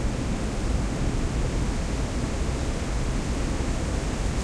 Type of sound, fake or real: real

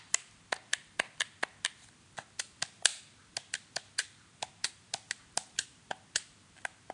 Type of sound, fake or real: real